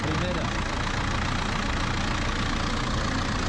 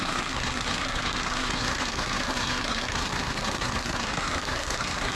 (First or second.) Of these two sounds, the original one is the first